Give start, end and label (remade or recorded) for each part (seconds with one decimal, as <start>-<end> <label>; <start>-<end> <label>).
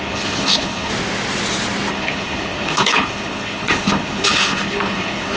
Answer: 0.0-0.9 remade; 0.9-1.9 recorded; 1.9-5.4 remade